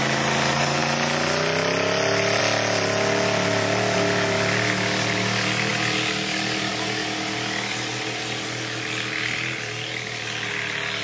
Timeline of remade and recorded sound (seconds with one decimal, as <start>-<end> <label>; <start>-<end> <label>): 0.0-11.0 recorded